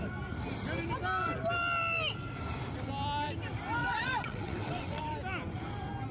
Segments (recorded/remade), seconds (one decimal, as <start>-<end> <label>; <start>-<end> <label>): 0.0-3.8 recorded; 3.8-5.0 remade; 5.0-6.1 recorded